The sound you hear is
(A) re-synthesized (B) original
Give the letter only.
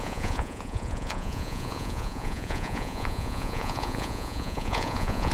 A